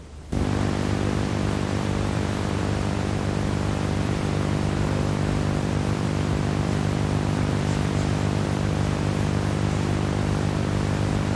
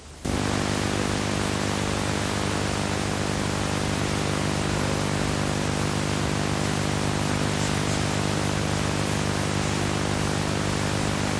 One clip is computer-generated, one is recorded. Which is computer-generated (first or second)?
first